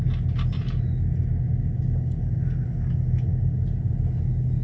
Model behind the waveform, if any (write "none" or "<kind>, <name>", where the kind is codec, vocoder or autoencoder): none